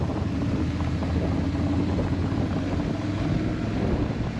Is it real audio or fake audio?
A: real